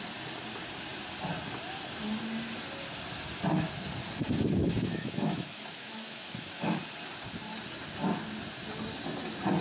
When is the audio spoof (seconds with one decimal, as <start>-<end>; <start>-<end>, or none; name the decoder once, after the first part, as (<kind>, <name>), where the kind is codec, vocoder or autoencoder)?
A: 4.6-6.8 (autoencoder, DAC-VAE)